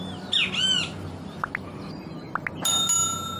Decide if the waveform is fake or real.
real